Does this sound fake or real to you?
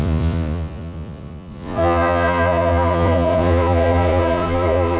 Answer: fake